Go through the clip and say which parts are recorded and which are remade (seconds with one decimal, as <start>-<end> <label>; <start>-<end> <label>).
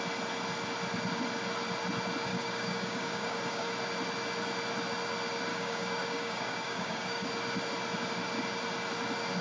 0.0-2.3 recorded; 2.3-3.7 remade; 3.7-5.5 recorded; 5.5-7.3 remade; 7.3-9.4 recorded